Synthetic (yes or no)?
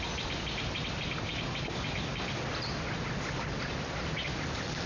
no